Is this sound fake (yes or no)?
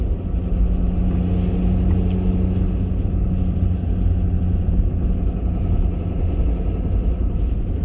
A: no